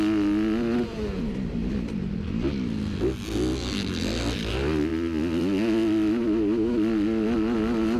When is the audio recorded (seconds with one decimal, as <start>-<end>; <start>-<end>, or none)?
0.0-8.0